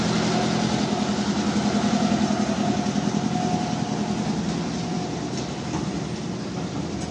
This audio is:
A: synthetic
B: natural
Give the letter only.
B